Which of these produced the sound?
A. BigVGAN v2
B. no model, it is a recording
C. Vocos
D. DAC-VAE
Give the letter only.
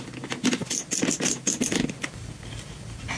B